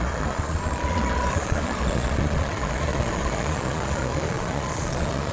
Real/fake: fake